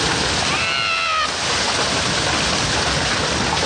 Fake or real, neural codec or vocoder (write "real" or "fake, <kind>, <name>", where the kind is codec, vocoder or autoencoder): real